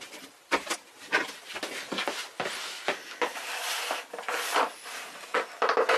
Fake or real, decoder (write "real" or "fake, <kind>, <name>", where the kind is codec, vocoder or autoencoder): real